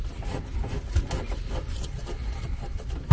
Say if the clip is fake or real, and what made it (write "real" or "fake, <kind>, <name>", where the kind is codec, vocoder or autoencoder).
real